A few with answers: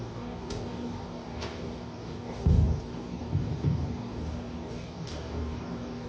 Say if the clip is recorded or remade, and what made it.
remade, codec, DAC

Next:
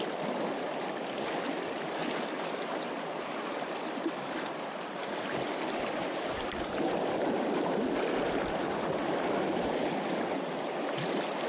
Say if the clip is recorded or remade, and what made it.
recorded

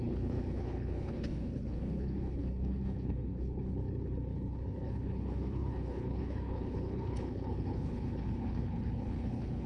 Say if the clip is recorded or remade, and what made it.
remade, codec, HILCodec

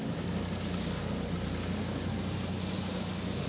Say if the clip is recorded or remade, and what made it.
recorded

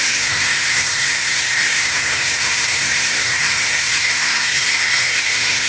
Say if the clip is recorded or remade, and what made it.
remade, codec, SNAC